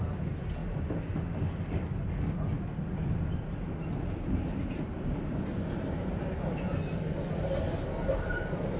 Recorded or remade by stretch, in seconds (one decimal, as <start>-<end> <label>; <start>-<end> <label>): 0.0-8.8 recorded

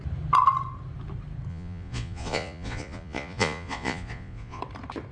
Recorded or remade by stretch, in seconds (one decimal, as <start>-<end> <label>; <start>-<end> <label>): 0.0-1.5 recorded; 1.5-4.6 remade; 4.6-5.1 recorded

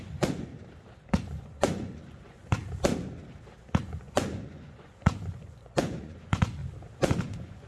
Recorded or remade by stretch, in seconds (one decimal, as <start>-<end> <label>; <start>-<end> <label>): 0.0-0.5 remade; 0.5-1.1 recorded; 1.1-2.6 remade; 2.6-3.8 recorded; 3.8-6.6 remade; 6.6-7.2 recorded; 7.2-7.7 remade

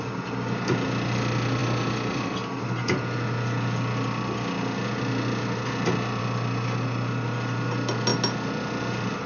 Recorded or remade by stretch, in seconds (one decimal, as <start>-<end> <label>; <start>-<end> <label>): 0.0-9.3 recorded

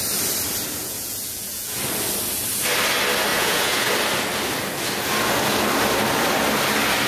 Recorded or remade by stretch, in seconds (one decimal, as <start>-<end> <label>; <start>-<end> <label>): 0.0-0.8 recorded; 0.8-1.8 remade; 1.8-3.3 recorded; 3.3-3.9 remade; 3.9-7.1 recorded

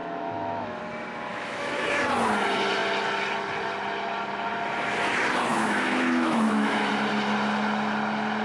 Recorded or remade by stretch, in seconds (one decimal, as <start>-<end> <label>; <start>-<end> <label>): 0.0-0.8 remade; 0.8-1.3 recorded; 1.3-2.0 remade; 2.0-5.5 recorded; 5.5-6.9 remade; 6.9-8.4 recorded

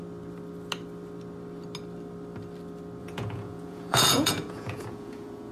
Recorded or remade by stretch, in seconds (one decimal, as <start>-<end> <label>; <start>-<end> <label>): 0.0-3.0 recorded; 3.0-5.5 remade